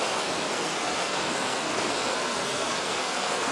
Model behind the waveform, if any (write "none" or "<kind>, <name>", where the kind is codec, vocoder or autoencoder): codec, SNAC